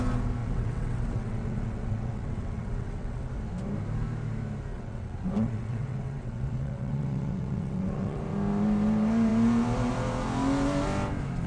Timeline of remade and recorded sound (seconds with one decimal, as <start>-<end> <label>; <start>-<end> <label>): 0.0-0.4 recorded; 0.4-3.3 remade; 3.3-4.7 recorded; 4.7-8.2 remade; 8.2-11.5 recorded